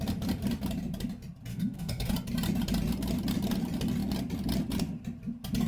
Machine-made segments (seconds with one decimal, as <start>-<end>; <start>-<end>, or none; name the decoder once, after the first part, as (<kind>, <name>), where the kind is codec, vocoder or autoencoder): 1.5-2.1 (codec, SNAC)